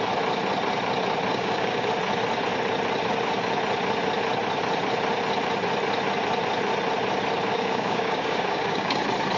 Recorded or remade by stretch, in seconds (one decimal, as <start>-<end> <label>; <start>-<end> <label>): 0.0-1.3 recorded; 1.3-1.9 remade; 1.9-7.5 recorded; 7.5-9.0 remade; 9.0-9.4 recorded